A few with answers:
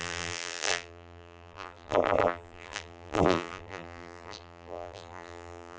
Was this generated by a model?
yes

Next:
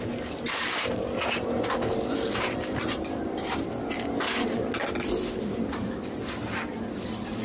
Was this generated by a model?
no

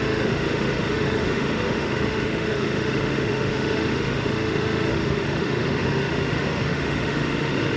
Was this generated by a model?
yes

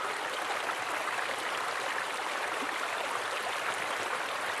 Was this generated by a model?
no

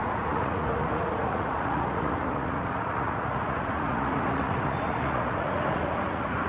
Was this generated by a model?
yes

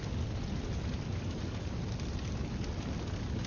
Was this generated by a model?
no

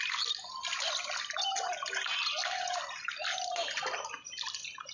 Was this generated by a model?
no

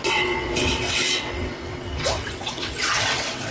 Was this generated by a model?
yes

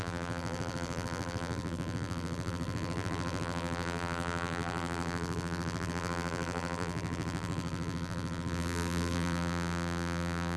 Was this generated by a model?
yes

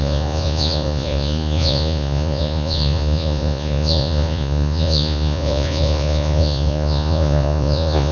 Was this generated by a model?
yes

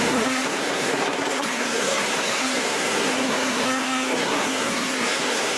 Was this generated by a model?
yes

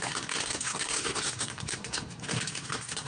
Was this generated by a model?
yes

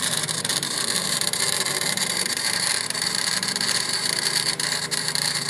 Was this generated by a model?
yes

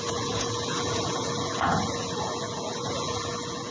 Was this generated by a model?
yes